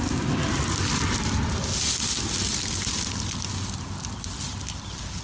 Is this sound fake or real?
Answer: real